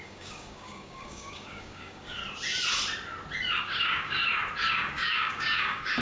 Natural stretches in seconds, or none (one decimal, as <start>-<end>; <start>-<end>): 2.2-3.6; 4.2-4.7